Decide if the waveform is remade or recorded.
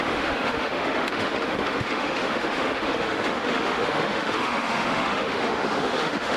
remade